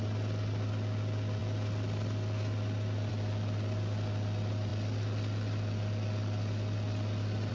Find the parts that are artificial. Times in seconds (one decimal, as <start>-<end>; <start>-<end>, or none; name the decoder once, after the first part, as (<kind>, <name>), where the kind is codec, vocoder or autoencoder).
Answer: none